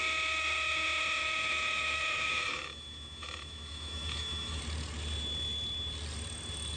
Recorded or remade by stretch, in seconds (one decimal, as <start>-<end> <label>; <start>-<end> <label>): 0.0-1.2 recorded; 1.2-4.6 remade; 4.6-6.8 recorded